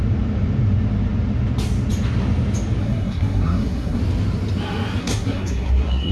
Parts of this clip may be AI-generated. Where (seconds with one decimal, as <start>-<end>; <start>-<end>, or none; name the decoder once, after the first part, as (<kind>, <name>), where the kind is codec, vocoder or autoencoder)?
2.8-4.0 (codec, SNAC); 5.0-6.1